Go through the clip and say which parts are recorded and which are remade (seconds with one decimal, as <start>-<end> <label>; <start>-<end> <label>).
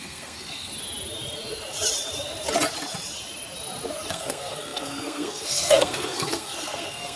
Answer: 0.0-0.7 remade; 0.7-4.1 recorded; 4.1-7.2 remade